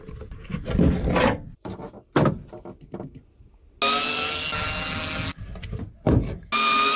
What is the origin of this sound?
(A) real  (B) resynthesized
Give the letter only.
A